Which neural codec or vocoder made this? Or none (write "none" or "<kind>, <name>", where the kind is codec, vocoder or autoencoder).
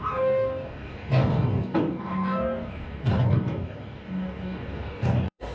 codec, DAC